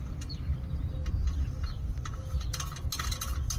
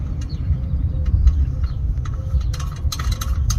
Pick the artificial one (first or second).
second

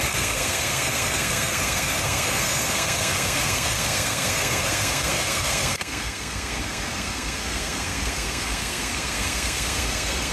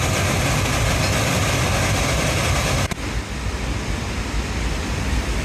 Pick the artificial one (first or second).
first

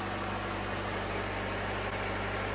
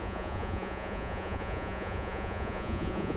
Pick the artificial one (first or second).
second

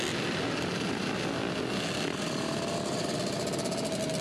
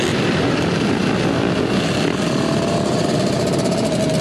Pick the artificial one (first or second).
second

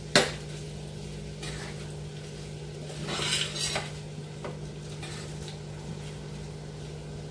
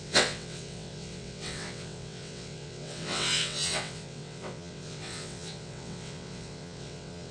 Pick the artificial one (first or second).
second